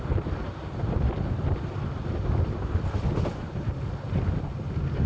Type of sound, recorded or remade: recorded